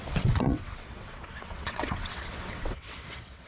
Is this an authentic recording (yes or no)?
no